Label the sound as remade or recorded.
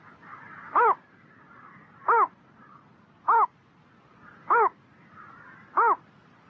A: recorded